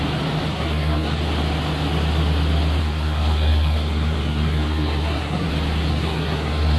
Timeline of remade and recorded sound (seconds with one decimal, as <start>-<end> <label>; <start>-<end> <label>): 0.0-0.5 recorded; 0.5-1.2 remade; 1.2-2.8 recorded; 2.8-5.5 remade; 5.5-5.9 recorded; 5.9-6.8 remade

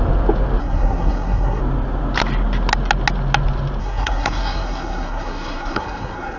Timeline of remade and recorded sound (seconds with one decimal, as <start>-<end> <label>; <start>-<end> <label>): 0.0-0.6 recorded; 0.6-1.6 remade; 1.6-3.8 recorded; 3.8-6.4 remade

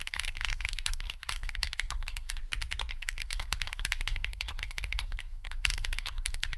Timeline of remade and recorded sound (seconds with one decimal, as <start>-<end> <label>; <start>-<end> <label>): 0.0-2.4 remade; 2.4-2.9 recorded; 2.9-6.6 remade

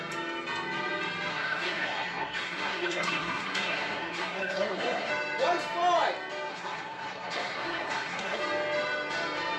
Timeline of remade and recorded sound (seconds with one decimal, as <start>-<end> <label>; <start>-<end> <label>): 0.0-1.3 recorded; 1.3-5.1 remade; 5.1-6.5 recorded; 6.5-8.4 remade; 8.4-9.6 recorded